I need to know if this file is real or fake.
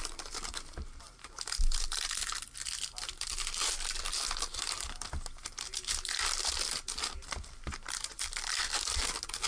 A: real